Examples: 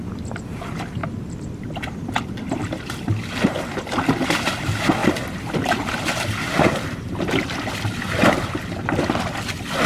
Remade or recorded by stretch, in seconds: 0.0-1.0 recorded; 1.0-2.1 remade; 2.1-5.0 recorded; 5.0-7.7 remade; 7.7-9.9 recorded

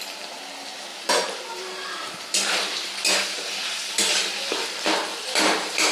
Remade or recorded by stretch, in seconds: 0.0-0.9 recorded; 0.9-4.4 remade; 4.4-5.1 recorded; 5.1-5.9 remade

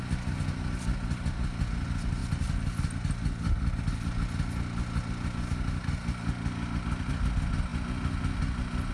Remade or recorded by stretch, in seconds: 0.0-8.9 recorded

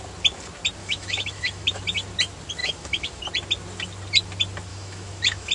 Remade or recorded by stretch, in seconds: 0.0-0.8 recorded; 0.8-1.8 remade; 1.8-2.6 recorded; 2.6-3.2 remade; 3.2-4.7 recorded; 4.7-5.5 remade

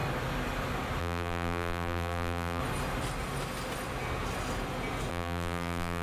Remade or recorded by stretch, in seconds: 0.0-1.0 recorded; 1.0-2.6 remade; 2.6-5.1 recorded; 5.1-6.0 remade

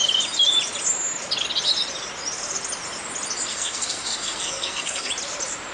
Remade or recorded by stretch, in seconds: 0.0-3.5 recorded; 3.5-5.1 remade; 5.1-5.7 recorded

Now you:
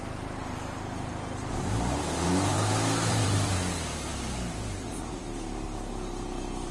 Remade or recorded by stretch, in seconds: 0.0-6.7 remade

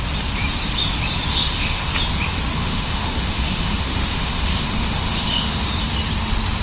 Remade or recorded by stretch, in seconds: 0.0-1.3 recorded; 1.3-2.0 remade; 2.0-2.6 recorded; 2.6-5.7 remade; 5.7-6.6 recorded